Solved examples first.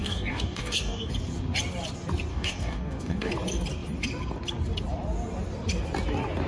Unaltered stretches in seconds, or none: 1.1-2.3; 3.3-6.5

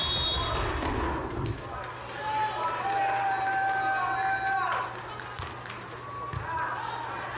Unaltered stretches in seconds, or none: 0.0-7.4

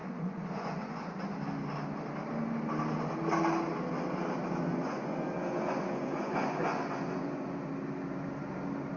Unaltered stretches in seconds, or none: 1.1-4.7; 7.6-9.0